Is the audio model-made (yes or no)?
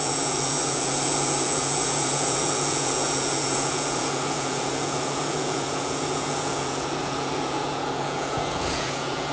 yes